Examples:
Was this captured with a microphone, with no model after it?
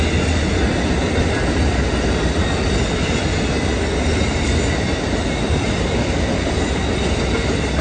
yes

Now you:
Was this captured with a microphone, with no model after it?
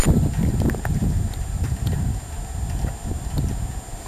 yes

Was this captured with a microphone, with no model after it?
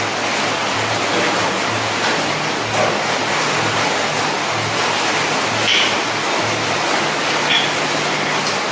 yes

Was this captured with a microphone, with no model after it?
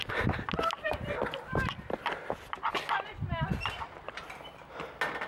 yes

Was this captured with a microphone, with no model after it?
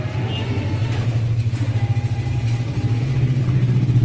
yes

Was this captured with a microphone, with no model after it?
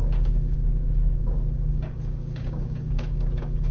no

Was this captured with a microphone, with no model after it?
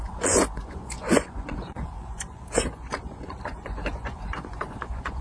no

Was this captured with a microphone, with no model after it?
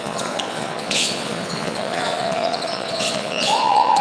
no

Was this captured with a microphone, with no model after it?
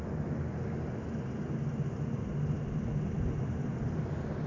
yes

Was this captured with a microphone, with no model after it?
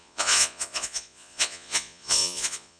no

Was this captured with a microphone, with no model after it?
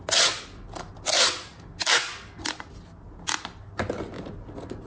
yes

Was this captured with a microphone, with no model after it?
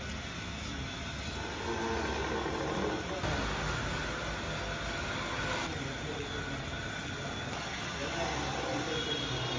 yes